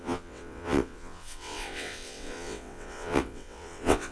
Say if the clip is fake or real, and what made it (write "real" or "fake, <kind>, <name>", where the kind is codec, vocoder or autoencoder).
fake, vocoder, WaveNeXt